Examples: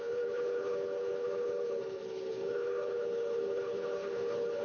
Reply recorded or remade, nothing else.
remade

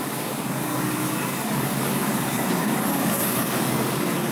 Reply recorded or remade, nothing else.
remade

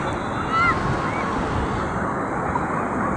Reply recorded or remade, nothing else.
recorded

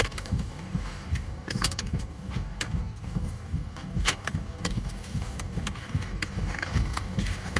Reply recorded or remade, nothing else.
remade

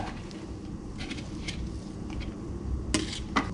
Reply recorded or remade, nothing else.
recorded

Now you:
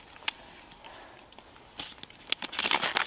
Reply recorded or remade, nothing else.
recorded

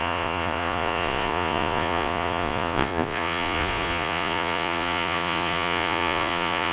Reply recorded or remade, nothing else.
remade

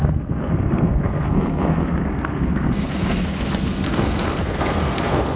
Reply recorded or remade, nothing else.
remade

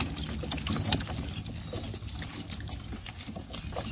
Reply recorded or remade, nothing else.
recorded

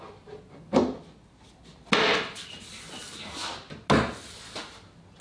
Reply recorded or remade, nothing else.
recorded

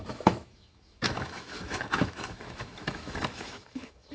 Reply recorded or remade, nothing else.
remade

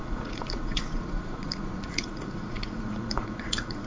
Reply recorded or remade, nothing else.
remade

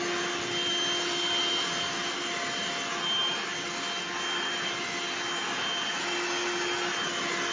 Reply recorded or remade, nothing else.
recorded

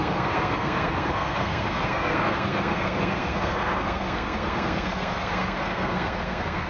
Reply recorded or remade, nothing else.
remade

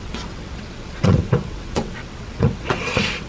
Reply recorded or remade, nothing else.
remade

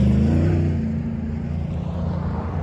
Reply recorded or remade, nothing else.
recorded